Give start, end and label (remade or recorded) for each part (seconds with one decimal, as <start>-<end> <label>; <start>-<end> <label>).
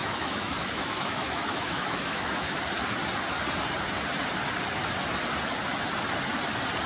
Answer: 0.0-2.6 remade; 2.6-6.9 recorded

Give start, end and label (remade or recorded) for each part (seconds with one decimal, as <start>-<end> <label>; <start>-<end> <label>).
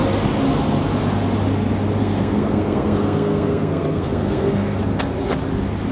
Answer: 0.0-2.0 recorded; 2.0-4.8 remade; 4.8-5.9 recorded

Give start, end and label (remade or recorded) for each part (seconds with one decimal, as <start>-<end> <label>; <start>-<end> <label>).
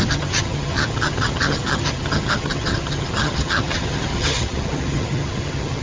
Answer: 0.0-5.8 remade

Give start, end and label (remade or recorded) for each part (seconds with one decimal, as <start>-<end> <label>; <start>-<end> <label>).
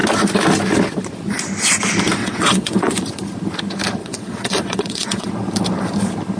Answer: 0.0-2.2 recorded; 2.2-3.0 remade; 3.0-4.0 recorded; 4.0-5.3 remade; 5.3-6.4 recorded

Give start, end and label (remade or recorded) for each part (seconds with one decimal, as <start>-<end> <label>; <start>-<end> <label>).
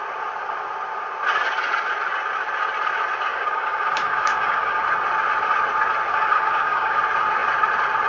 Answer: 0.0-3.3 recorded; 3.3-4.8 remade; 4.8-6.1 recorded; 6.1-7.0 remade; 7.0-8.1 recorded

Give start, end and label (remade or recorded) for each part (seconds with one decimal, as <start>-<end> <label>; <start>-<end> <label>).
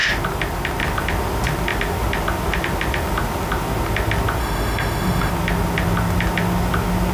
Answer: 0.0-4.4 recorded; 4.4-5.3 remade; 5.3-7.1 recorded